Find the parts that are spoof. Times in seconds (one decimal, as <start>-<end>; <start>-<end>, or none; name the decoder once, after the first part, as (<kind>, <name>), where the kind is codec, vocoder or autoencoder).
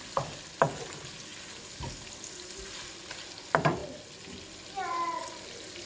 none